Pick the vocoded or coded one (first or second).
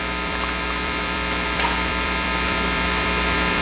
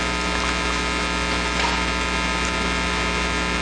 first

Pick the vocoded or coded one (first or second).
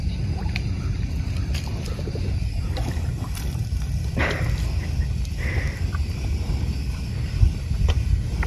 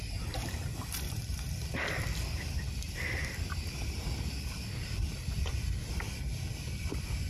second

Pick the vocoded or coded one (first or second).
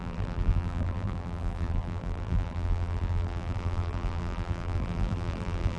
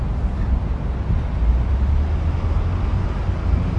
first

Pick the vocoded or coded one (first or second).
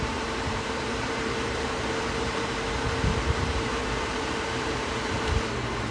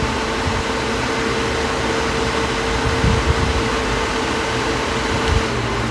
first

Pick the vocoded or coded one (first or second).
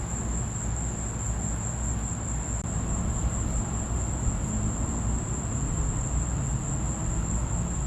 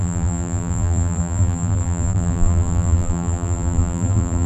second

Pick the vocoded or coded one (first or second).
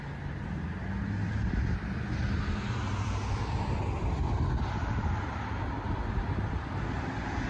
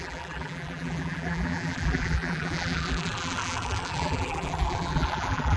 second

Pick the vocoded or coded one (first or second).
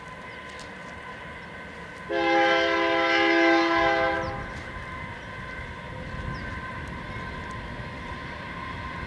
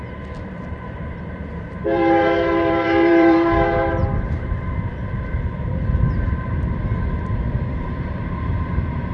second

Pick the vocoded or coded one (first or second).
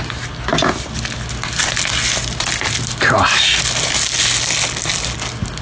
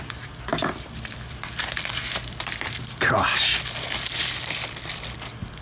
second